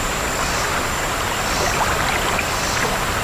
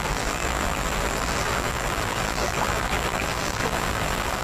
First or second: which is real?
first